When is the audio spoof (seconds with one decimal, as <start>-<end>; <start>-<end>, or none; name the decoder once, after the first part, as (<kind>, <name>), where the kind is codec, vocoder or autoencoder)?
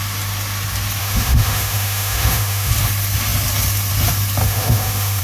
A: 1.0-2.7 (autoencoder, DAC-VAE); 4.4-5.2